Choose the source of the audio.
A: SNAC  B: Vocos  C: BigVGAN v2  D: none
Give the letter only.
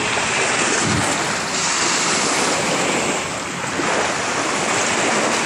D